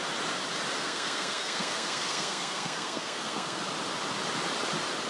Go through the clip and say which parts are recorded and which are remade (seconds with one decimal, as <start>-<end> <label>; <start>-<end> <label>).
0.0-0.8 recorded; 0.8-3.6 remade; 3.6-5.1 recorded